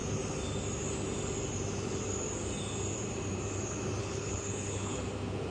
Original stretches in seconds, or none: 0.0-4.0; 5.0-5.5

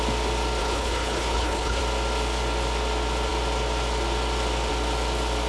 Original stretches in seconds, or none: 0.0-0.6; 1.8-5.5

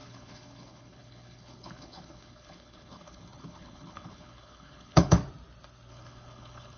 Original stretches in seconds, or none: 5.2-5.9